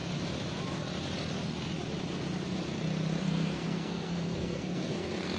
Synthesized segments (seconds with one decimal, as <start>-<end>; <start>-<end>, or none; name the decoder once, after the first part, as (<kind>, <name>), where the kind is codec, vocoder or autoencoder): 3.2-5.4 (codec, SNAC)